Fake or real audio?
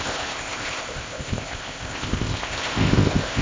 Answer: fake